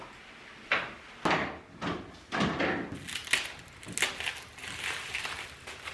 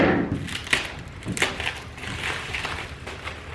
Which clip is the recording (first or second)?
first